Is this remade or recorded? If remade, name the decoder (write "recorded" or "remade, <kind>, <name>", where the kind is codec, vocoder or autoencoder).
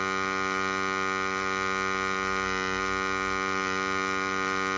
recorded